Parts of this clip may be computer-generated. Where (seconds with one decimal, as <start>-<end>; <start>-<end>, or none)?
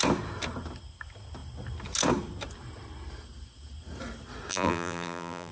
4.5-5.5